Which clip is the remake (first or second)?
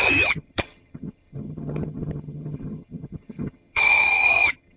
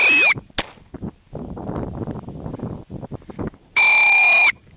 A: first